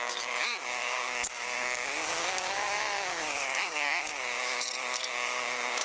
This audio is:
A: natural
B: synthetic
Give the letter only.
B